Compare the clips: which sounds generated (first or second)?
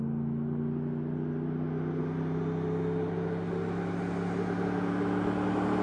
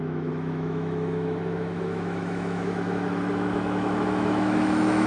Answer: second